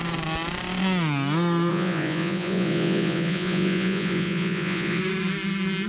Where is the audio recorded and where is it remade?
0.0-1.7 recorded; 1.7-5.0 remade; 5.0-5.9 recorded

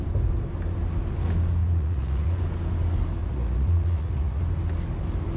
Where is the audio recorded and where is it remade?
0.0-1.6 recorded; 1.6-2.4 remade; 2.4-3.2 recorded; 3.2-4.4 remade; 4.4-5.4 recorded

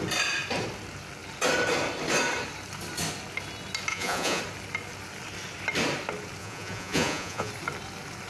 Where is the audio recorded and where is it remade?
0.0-3.9 recorded; 3.9-4.4 remade; 4.4-6.4 recorded; 6.4-7.5 remade; 7.5-8.3 recorded